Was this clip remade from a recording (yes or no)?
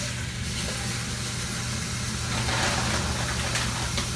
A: no